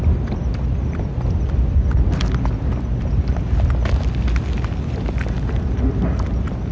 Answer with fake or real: real